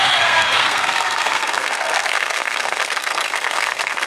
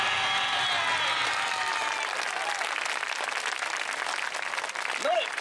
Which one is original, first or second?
second